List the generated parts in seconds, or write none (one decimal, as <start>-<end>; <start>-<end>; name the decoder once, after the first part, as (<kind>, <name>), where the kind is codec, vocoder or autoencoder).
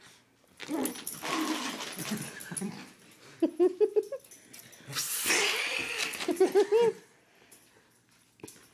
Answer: none